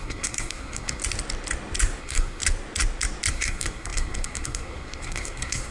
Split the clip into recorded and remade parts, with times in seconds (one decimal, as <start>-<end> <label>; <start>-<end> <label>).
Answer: 0.0-1.0 remade; 1.0-2.0 recorded; 2.0-2.4 remade; 2.4-3.3 recorded; 3.3-5.7 remade